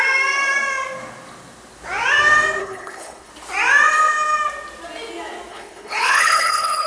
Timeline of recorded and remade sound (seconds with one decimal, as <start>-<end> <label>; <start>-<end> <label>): 0.0-2.6 recorded; 2.6-3.3 remade; 3.3-5.5 recorded; 5.5-6.9 remade